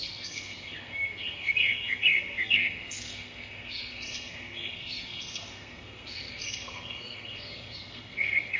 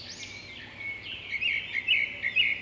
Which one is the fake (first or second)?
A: first